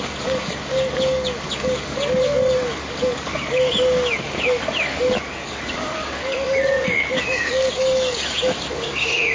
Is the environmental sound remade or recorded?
remade